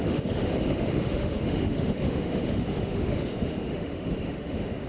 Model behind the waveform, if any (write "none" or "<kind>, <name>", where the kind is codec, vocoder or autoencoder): autoencoder, DAC-VAE